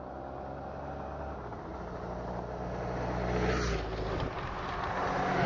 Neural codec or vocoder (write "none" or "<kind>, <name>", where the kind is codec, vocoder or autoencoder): none